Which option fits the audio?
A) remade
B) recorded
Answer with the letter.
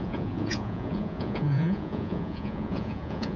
A